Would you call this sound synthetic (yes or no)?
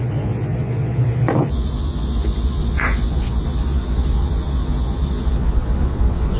yes